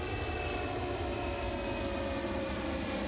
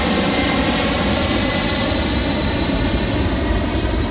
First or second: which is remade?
second